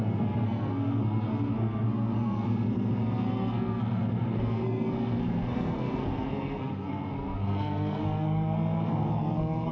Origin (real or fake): fake